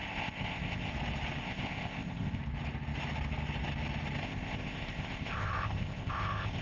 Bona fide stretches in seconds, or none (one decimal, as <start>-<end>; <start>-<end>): 0.9-1.4; 2.4-4.2